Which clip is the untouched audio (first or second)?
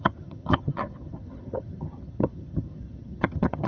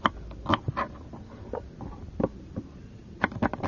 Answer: second